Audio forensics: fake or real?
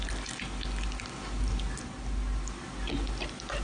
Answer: real